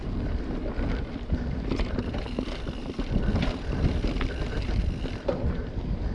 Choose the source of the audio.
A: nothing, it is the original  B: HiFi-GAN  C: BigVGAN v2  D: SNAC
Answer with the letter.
A